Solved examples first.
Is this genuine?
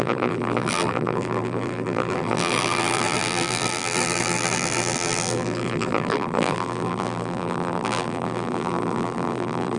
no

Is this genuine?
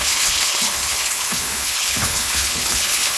no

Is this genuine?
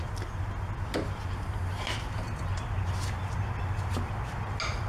yes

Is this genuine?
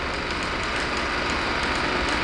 yes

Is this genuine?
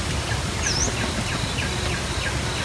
yes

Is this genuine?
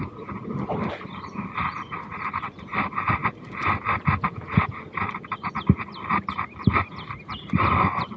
yes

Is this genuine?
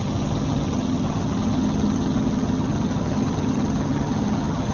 no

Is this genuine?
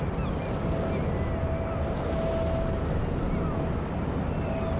yes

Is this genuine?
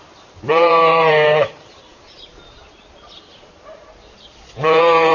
no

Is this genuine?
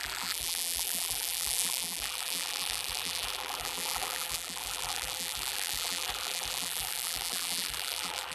no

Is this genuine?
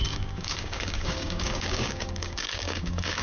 no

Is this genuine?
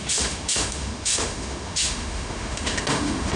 no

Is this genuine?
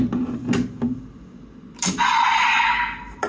yes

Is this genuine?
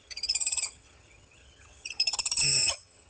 no